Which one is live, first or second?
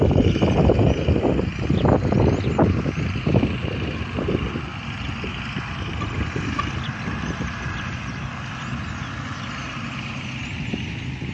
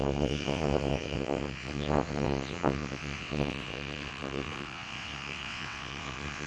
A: first